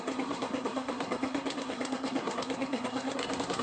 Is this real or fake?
fake